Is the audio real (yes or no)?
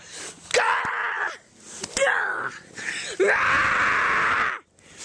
yes